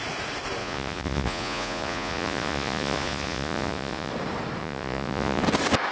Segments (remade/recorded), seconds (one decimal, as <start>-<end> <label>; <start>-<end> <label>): 0.0-0.6 recorded; 0.6-4.1 remade; 4.1-4.6 recorded; 4.6-5.4 remade; 5.4-5.9 recorded